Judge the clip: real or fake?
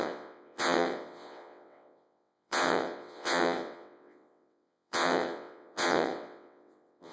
fake